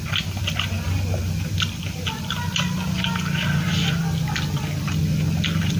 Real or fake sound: fake